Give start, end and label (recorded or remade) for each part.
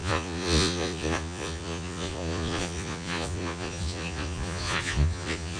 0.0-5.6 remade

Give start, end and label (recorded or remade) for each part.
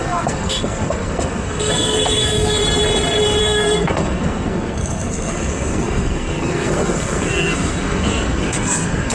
0.0-2.6 remade; 2.6-3.4 recorded; 3.4-9.1 remade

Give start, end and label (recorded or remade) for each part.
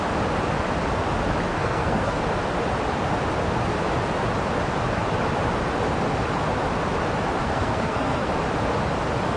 0.0-1.5 recorded; 1.5-2.2 remade; 2.2-7.4 recorded; 7.4-8.3 remade; 8.3-9.4 recorded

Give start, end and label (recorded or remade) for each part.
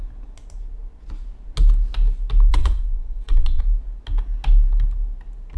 0.0-2.5 recorded; 2.5-3.6 remade; 3.6-5.6 recorded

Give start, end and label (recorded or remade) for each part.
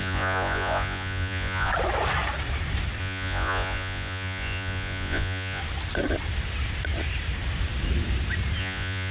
0.0-1.7 remade; 1.7-3.0 recorded; 3.0-5.6 remade; 5.6-8.6 recorded; 8.6-9.1 remade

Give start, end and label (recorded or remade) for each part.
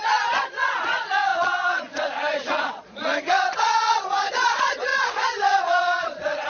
0.0-6.5 remade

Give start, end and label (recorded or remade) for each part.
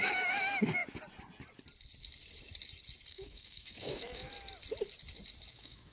0.0-0.8 remade; 0.8-3.1 recorded; 3.1-4.3 remade; 4.3-5.5 recorded; 5.5-5.9 remade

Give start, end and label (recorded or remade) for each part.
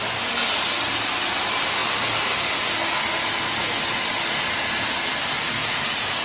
0.0-6.2 recorded